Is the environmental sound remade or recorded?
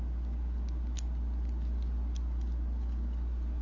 recorded